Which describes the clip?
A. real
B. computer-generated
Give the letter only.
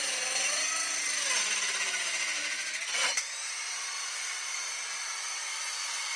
A